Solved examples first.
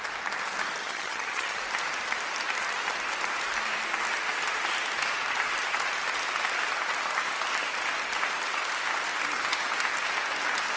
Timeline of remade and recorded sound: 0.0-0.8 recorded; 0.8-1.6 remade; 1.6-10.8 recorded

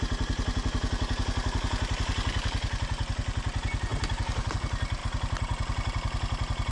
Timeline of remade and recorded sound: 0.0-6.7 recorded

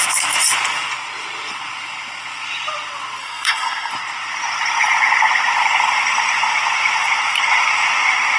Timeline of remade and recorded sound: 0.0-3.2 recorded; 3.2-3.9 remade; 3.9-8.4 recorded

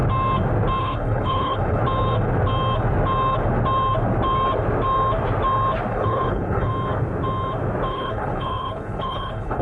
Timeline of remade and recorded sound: 0.0-0.8 recorded; 0.8-1.8 remade; 1.8-5.9 recorded; 5.9-6.7 remade; 6.7-7.9 recorded; 7.9-9.6 remade

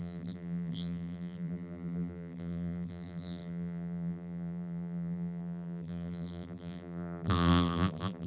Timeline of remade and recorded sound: 0.0-8.3 remade